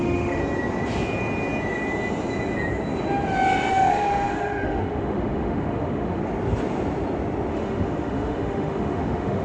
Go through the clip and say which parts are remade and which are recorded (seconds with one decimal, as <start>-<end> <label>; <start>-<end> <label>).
0.0-0.4 remade; 0.4-3.7 recorded; 3.7-6.2 remade; 6.2-7.5 recorded; 7.5-9.4 remade